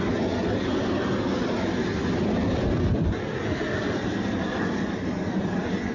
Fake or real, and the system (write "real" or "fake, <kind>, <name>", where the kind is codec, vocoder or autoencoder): real